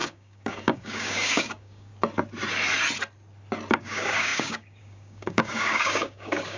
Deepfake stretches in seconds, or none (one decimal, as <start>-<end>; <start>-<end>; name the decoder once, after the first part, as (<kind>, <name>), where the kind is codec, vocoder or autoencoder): 0.0-1.9 (codec, DAC); 3.7-6.6